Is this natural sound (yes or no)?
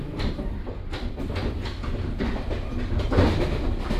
yes